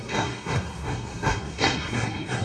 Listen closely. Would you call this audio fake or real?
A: fake